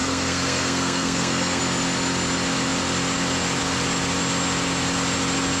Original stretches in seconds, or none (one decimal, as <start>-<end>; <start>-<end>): 1.6-5.6